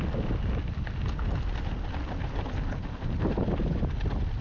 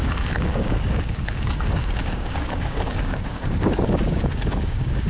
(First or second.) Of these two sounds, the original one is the first